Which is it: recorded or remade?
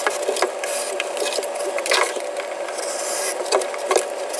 remade